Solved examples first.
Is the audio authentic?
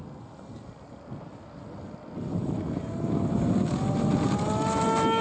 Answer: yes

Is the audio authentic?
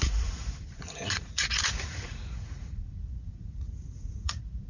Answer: no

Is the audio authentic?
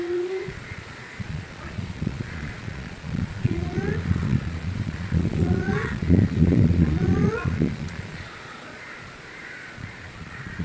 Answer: no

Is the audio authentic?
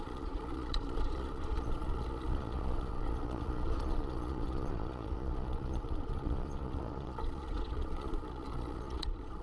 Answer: no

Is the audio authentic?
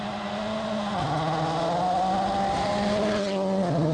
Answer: yes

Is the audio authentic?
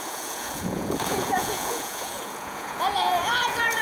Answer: no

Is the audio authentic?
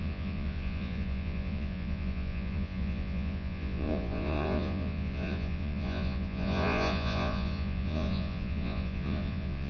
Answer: no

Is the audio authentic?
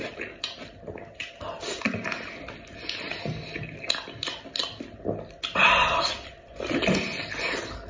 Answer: yes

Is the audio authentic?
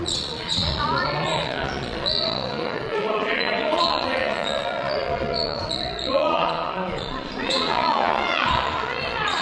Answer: no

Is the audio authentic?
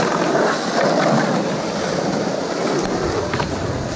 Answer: yes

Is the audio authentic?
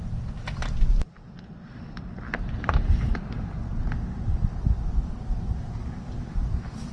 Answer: yes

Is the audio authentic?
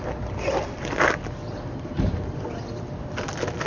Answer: yes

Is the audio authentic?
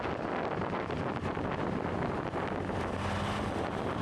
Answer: yes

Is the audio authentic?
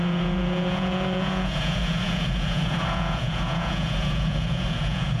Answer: no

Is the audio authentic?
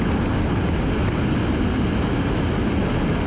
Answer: yes